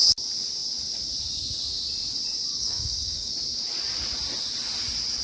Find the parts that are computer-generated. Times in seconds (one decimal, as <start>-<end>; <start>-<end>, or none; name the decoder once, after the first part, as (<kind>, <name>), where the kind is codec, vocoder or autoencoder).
2.5-3.3 (codec, DAC)